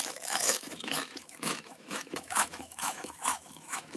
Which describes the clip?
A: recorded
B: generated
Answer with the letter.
B